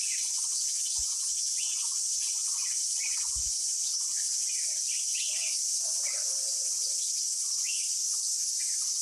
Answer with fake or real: real